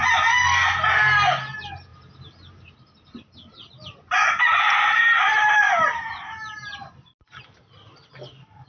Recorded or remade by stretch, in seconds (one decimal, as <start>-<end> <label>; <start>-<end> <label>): 0.0-8.7 recorded